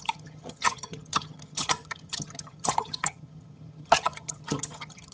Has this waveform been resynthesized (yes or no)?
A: yes